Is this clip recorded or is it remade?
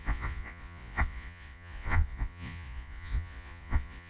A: remade